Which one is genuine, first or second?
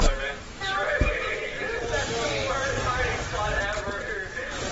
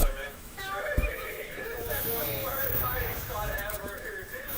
first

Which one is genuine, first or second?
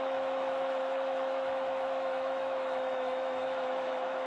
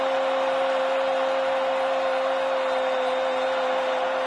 second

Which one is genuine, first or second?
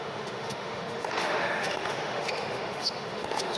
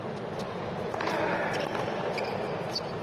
second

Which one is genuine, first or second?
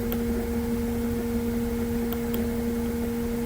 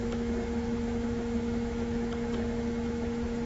first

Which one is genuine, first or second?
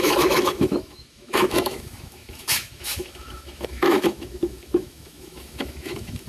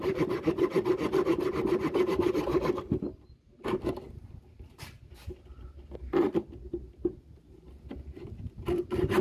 second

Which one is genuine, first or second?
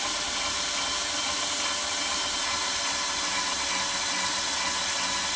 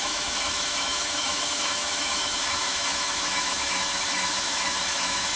first